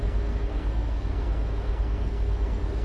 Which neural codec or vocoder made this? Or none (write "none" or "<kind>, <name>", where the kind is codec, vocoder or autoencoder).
codec, SNAC